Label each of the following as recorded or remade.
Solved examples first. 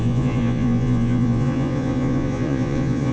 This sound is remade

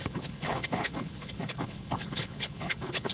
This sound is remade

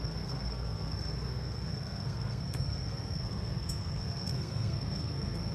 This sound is remade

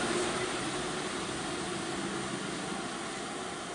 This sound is recorded